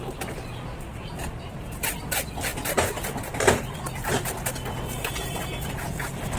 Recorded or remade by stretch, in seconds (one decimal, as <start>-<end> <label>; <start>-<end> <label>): 0.0-6.4 recorded

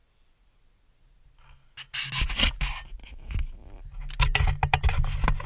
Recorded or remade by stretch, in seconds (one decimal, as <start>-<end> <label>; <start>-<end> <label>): 0.0-3.0 recorded; 3.0-3.8 remade; 3.8-5.5 recorded